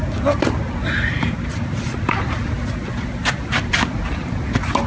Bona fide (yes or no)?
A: yes